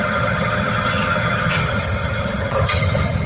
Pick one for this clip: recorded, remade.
remade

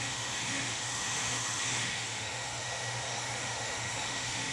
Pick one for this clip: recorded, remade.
remade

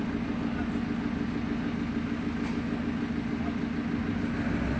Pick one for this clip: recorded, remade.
recorded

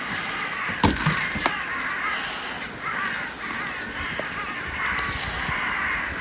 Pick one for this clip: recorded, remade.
recorded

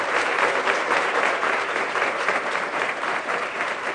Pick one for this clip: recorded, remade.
remade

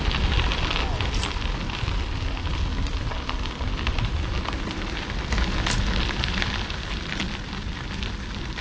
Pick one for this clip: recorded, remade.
recorded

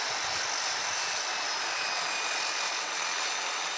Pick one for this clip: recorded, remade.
recorded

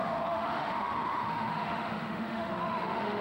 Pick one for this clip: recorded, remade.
remade